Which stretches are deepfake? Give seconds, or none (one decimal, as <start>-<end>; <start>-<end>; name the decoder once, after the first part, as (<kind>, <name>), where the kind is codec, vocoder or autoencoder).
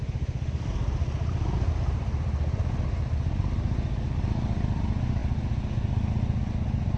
none